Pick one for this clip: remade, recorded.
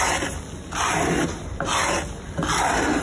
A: recorded